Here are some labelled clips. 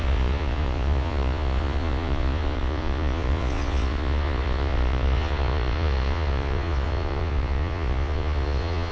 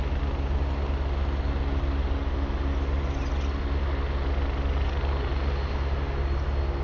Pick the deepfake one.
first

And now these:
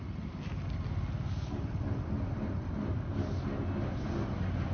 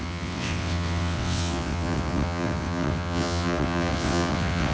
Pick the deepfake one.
second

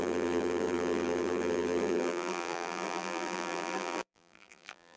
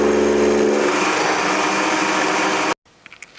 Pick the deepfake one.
first